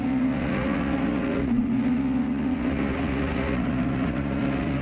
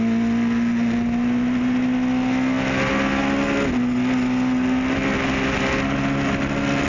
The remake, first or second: first